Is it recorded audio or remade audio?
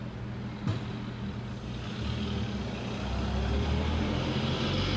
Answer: recorded